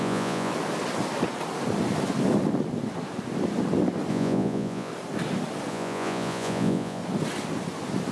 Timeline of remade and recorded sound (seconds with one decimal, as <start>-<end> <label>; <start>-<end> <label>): 0.0-0.5 remade; 0.5-4.1 recorded; 4.1-4.9 remade; 4.9-5.7 recorded; 5.7-7.0 remade; 7.0-8.1 recorded